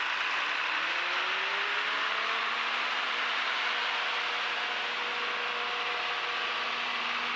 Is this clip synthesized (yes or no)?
no